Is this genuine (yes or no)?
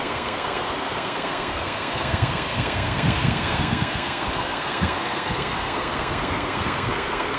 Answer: no